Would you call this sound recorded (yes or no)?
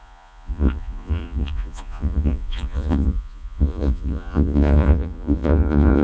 no